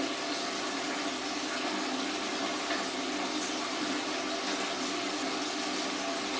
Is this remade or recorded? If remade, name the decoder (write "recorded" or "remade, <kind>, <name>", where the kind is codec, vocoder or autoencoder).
recorded